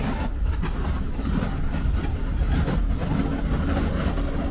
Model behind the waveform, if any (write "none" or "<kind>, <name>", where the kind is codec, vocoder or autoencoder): none